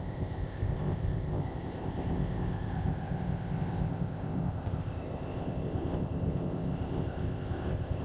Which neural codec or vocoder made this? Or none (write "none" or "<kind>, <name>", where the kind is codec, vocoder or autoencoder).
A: codec, ZipCodec